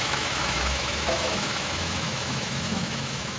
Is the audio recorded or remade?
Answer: remade